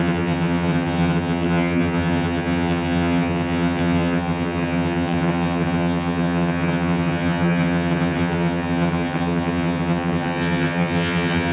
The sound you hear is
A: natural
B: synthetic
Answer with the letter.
B